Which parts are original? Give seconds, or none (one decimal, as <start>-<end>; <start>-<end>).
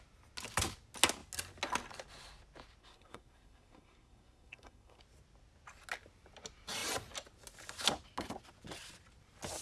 0.0-2.8; 5.0-9.6